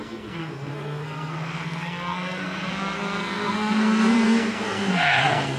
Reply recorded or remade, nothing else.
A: remade